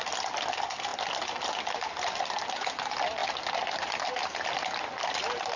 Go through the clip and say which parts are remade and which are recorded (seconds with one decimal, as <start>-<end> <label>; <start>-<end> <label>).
0.0-0.9 recorded; 0.9-2.5 remade; 2.5-3.2 recorded; 3.2-4.1 remade; 4.1-5.6 recorded